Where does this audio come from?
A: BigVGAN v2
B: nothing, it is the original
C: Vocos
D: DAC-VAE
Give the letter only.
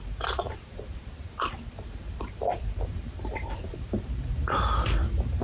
A